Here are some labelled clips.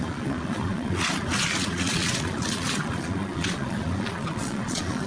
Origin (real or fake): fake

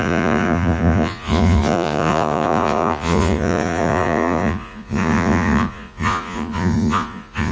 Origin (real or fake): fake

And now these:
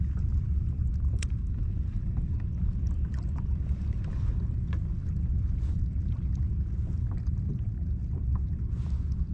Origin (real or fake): fake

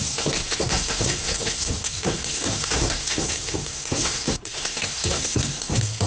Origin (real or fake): fake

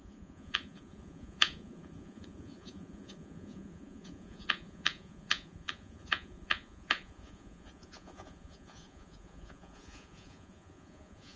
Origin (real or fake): fake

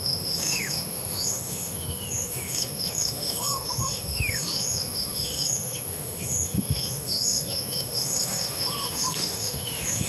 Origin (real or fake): fake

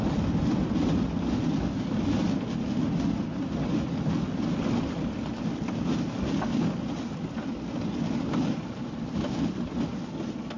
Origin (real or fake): real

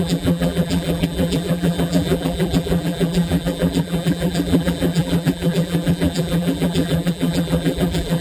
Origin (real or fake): fake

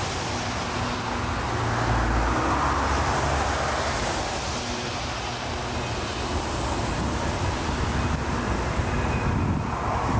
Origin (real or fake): real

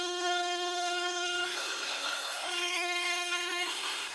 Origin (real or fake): fake